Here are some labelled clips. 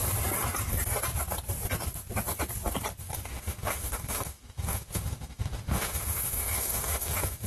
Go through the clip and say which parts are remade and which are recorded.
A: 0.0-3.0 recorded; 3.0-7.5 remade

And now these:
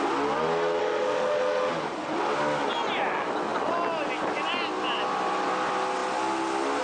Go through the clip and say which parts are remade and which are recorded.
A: 0.0-0.8 recorded; 0.8-1.7 remade; 1.7-6.8 recorded